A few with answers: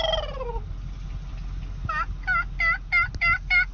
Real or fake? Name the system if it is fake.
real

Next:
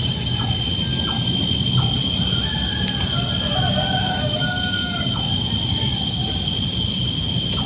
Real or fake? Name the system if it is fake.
real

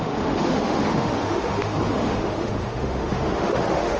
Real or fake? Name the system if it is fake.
fake, autoencoder, DAC-VAE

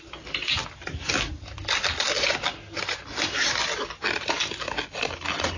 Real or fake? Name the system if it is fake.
real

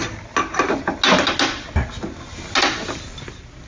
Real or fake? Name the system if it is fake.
real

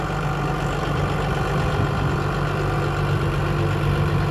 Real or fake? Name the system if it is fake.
real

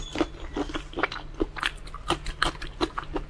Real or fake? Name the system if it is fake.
real